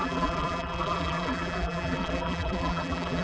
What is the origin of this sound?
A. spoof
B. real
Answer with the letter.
A